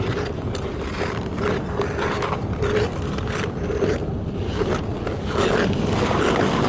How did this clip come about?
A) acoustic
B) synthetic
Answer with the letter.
A